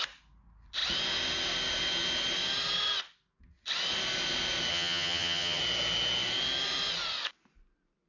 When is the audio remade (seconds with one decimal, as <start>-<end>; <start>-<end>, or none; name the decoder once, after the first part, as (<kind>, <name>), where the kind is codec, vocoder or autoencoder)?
4.7-5.6 (vocoder, HiFi-GAN)